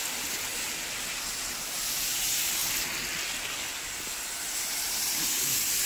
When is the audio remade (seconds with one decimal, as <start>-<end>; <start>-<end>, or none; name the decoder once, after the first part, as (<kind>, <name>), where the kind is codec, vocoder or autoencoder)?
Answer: 0.0-0.5 (vocoder, BigVGAN v2); 1.2-2.6; 4.2-5.9